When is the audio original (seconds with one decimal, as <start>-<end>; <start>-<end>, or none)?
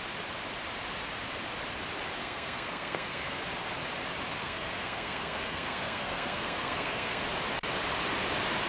0.0-2.2; 3.4-4.4; 7.2-8.7